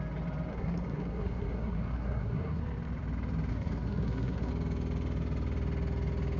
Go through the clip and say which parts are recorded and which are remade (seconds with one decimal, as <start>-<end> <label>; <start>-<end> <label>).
0.0-0.5 recorded; 0.5-2.6 remade; 2.6-3.5 recorded; 3.5-4.5 remade; 4.5-6.4 recorded